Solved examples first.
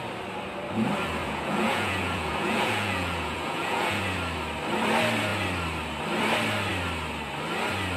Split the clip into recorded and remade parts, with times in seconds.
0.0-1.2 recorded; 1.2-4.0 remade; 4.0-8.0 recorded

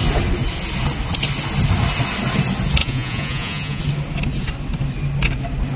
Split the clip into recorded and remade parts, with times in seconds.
0.0-2.8 recorded; 2.8-3.8 remade; 3.8-5.8 recorded

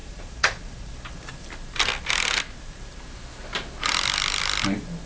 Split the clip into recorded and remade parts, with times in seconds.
0.0-0.9 remade; 0.9-5.1 recorded

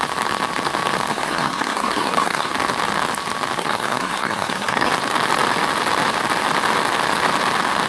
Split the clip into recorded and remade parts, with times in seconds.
0.0-1.1 recorded; 1.1-2.5 remade; 2.5-3.6 recorded; 3.6-4.9 remade; 4.9-7.9 recorded

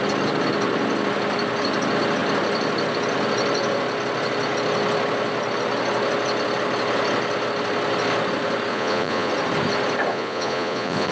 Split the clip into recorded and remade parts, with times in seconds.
0.0-8.7 recorded; 8.7-9.3 remade; 9.3-10.1 recorded; 10.1-11.1 remade

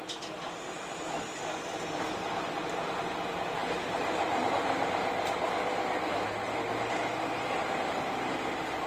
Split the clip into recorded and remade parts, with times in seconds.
0.0-8.9 recorded

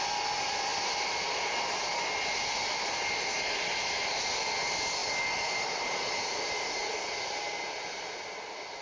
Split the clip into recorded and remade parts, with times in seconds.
0.0-8.8 recorded